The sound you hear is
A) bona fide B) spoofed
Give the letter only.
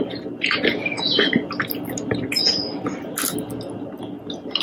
A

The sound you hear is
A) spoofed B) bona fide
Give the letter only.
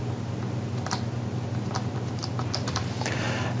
B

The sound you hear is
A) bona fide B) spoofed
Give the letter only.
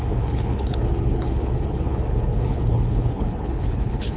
B